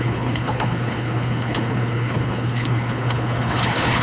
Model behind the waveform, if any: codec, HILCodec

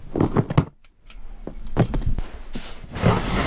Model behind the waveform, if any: none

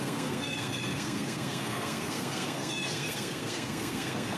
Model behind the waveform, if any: codec, SNAC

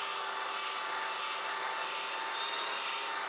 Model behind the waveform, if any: none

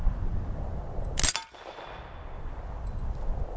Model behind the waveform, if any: none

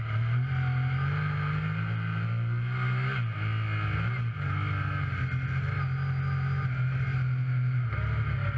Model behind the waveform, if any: none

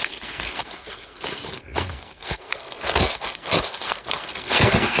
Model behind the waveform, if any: codec, SNAC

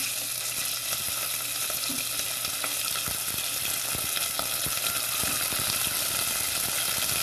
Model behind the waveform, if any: none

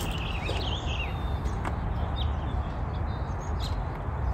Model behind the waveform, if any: none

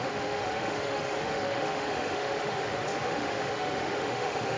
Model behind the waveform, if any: autoencoder, DAC-VAE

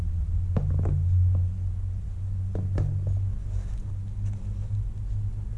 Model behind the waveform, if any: none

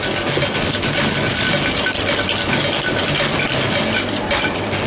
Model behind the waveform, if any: none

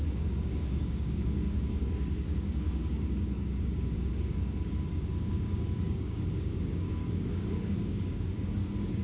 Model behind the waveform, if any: codec, DAC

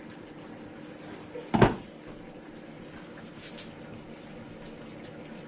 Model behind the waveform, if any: none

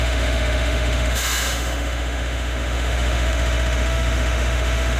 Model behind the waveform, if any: autoencoder, DAC-VAE